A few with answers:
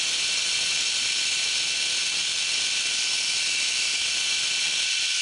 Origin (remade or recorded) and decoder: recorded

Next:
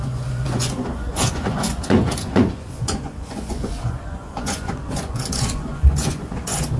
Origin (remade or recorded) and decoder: remade, vocoder, Vocos